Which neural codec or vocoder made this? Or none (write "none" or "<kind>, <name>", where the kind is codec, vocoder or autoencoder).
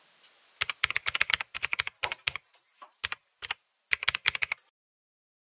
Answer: none